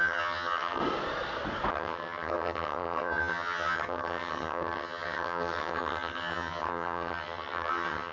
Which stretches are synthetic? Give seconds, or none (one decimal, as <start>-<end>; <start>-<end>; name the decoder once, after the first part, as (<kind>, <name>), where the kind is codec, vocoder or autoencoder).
0.0-0.8 (vocoder, HiFi-GAN); 1.7-8.1